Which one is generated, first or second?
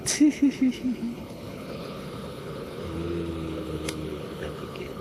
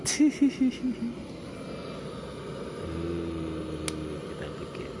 first